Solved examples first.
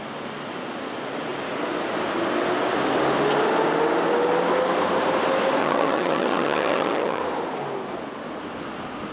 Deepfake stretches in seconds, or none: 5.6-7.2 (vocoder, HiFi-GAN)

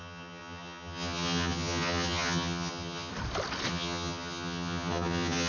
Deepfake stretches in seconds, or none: 0.0-3.1 (vocoder, HiFi-GAN); 3.7-5.5

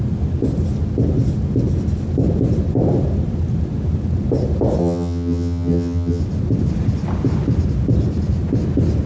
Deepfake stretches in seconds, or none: 4.8-6.2 (vocoder, HiFi-GAN)

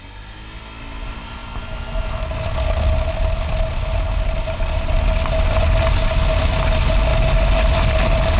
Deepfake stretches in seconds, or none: none

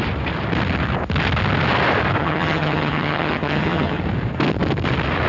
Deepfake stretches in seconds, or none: 2.2-4.0 (vocoder, HiFi-GAN)

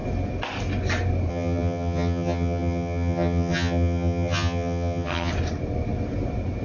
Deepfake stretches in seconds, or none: 1.3-5.3 (vocoder, HiFi-GAN)

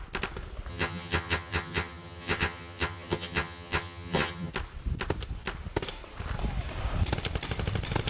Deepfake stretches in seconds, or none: 0.7-4.5 (vocoder, HiFi-GAN)